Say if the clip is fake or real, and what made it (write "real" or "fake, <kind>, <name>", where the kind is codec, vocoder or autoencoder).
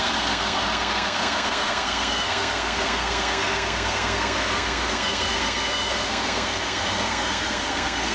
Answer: fake, codec, SNAC